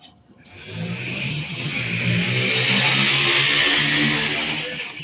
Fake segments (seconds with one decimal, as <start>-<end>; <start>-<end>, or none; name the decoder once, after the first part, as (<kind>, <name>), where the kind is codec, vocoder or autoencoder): 0.0-0.5 (vocoder, HiFi-GAN); 1.3-1.8